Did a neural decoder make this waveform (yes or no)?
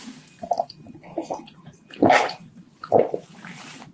yes